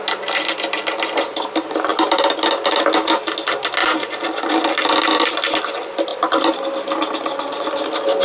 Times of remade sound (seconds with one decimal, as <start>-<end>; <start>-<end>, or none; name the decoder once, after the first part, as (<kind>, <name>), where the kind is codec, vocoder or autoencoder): 3.8-4.6 (vocoder, BigVGAN v2)